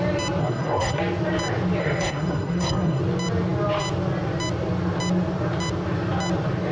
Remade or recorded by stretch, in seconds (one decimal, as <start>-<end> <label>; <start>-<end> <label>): 0.0-0.4 recorded; 0.4-1.0 remade; 1.0-1.8 recorded; 1.8-3.0 remade; 3.0-6.7 recorded